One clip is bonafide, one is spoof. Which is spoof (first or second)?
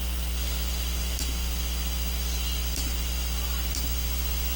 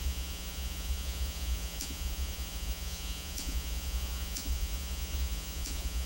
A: second